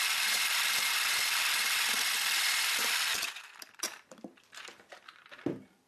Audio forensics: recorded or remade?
remade